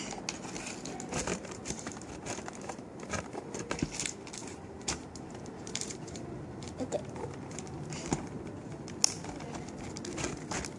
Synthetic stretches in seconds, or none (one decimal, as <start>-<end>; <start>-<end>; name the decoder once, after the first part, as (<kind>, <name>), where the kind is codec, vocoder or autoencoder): 1.2-3.8 (vocoder, BigVGAN v2); 4.4-8.7

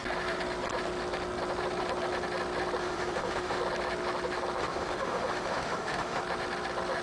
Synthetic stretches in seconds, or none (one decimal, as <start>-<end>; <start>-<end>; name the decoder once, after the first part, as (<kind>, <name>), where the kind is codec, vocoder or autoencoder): 2.8-3.6 (autoencoder, DAC-VAE); 4.6-6.2